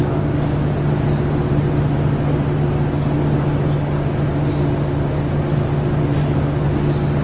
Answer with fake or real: real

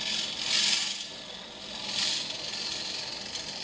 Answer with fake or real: real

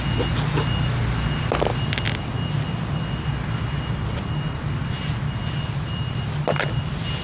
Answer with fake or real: real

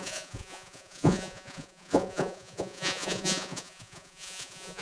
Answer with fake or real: fake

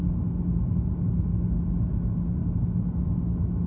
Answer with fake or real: real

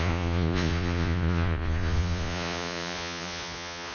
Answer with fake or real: fake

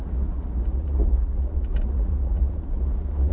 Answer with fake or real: fake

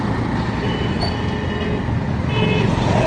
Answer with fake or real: real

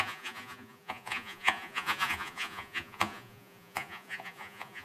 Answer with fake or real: fake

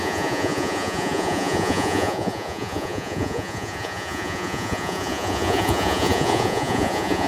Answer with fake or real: fake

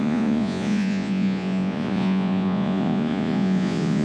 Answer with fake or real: fake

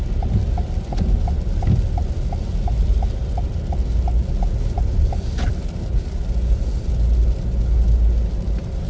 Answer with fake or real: real